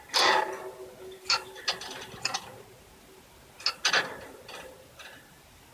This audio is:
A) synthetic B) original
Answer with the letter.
B